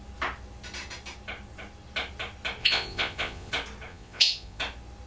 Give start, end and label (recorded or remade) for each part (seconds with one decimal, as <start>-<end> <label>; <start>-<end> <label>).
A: 0.0-2.6 recorded; 2.6-3.5 remade; 3.5-3.9 recorded; 3.9-4.6 remade; 4.6-5.1 recorded